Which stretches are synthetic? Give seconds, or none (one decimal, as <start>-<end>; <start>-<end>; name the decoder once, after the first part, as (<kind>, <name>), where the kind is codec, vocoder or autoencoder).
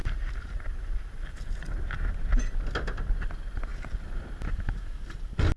0.0-1.9 (vocoder, BigVGAN v2); 3.7-4.2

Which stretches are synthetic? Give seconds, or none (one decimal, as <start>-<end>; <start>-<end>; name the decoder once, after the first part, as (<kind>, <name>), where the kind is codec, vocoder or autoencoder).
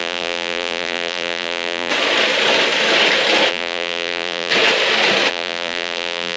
0.0-1.9 (vocoder, BigVGAN v2); 3.5-4.5; 5.3-6.4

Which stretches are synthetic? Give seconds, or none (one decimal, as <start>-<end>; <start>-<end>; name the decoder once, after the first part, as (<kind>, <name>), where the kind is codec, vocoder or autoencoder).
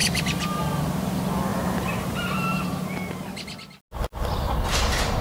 0.0-0.6 (vocoder, BigVGAN v2); 1.5-2.8